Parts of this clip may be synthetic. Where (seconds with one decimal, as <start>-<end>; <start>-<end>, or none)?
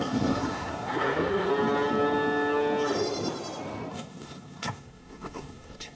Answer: 0.0-1.5; 3.9-6.0